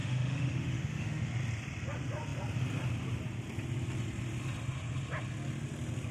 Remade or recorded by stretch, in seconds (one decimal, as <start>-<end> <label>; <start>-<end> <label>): 0.0-1.3 remade; 1.3-6.1 recorded